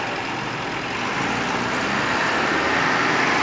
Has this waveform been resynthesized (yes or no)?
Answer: no